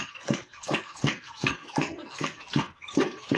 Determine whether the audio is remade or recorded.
remade